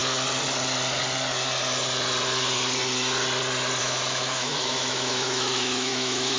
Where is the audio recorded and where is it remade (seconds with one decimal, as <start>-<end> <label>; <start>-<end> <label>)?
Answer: 0.0-3.8 recorded; 3.8-6.4 remade